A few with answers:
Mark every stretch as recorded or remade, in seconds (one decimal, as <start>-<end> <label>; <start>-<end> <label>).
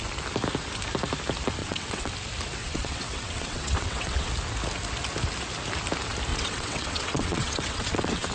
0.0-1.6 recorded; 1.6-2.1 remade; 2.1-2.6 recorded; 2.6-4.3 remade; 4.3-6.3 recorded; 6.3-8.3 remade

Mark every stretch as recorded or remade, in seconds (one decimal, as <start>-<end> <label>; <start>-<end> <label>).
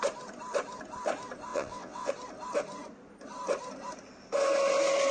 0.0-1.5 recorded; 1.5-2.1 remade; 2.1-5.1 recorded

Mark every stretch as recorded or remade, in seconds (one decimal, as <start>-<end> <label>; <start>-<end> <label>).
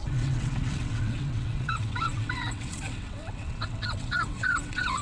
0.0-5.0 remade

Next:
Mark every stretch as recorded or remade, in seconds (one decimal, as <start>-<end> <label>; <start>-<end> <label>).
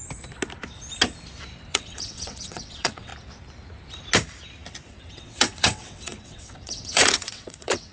0.0-1.7 recorded; 1.7-3.1 remade; 3.1-4.9 recorded; 4.9-7.9 remade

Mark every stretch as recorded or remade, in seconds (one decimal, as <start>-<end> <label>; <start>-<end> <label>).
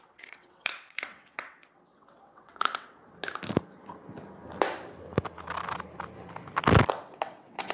0.0-3.0 remade; 3.0-6.9 recorded; 6.9-7.7 remade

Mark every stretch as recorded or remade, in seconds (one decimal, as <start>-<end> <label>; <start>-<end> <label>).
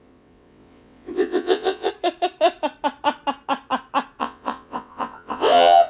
0.0-1.9 remade; 1.9-4.2 recorded; 4.2-5.9 remade